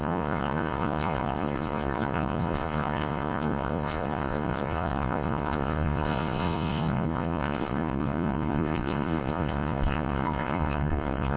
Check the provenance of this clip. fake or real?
fake